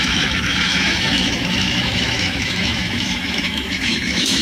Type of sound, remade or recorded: remade